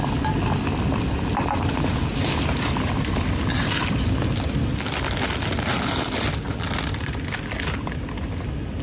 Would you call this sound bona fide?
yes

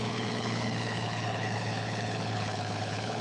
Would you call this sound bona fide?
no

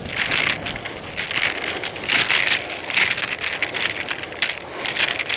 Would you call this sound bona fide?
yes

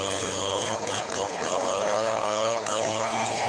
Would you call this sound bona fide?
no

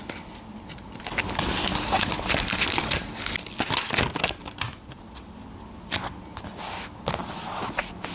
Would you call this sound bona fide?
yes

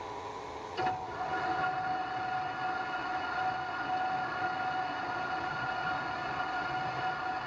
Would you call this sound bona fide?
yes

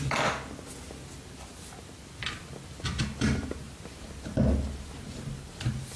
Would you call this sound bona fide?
yes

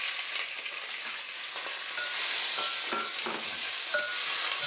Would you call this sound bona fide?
yes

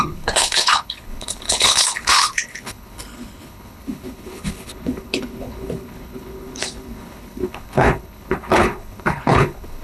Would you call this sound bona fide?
no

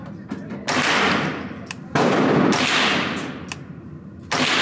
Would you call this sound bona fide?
yes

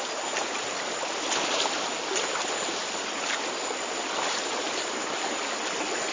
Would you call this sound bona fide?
yes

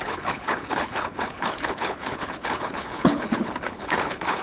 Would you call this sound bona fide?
no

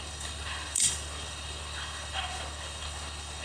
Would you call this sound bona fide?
no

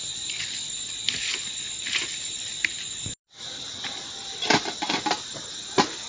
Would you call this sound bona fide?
yes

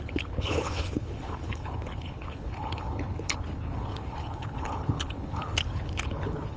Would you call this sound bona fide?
no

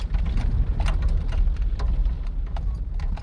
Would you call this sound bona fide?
yes